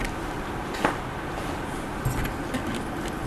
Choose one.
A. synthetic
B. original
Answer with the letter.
B